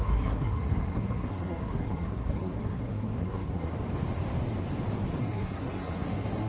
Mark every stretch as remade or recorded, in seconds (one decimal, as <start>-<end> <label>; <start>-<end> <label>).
0.0-3.7 remade; 3.7-5.2 recorded; 5.2-6.5 remade